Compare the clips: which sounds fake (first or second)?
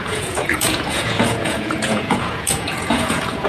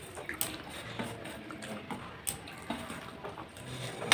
first